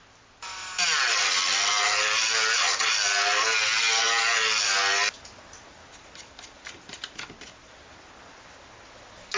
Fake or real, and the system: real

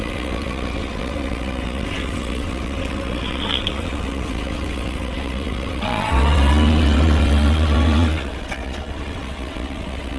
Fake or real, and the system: fake, vocoder, WaveNeXt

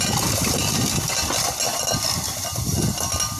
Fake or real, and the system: real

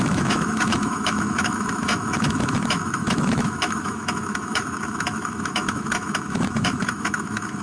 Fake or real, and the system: fake, autoencoder, DAC-VAE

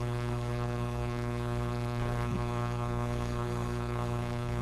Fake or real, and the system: fake, codec, SNAC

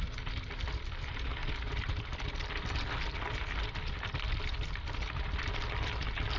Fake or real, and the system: real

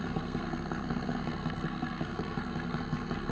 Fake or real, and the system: fake, codec, SNAC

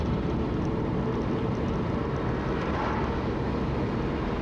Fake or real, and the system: real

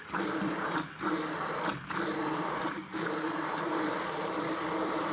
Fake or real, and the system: fake, vocoder, BigVGAN v2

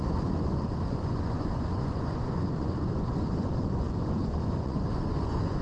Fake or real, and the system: fake, vocoder, Vocos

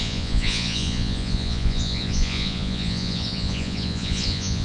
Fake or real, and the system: fake, vocoder, Vocos